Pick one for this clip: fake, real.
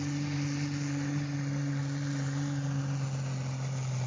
real